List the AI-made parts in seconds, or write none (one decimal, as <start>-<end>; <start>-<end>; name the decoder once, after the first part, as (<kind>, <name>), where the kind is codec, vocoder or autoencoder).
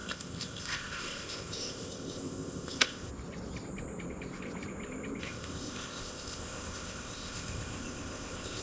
0.0-3.1 (codec, ZipCodec); 5.2-8.6